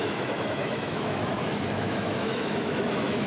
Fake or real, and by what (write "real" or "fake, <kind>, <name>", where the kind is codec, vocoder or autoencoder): fake, autoencoder, DAC-VAE